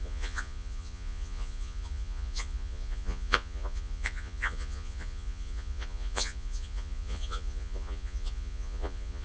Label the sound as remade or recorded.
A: remade